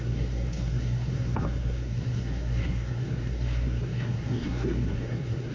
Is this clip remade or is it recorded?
remade